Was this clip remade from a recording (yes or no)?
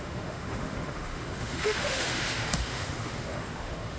yes